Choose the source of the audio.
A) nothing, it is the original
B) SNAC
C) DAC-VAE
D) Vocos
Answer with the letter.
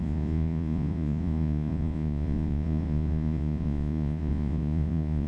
D